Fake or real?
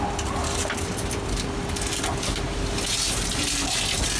real